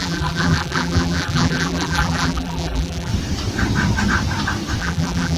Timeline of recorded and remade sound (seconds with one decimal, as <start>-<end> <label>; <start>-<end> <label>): 0.0-3.1 remade; 3.1-4.8 recorded; 4.8-5.4 remade